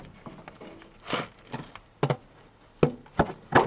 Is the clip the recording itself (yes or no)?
yes